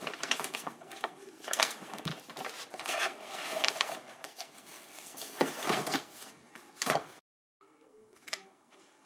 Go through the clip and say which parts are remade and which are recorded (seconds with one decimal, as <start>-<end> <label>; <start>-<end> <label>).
0.0-2.1 remade; 2.1-2.7 recorded; 2.7-9.1 remade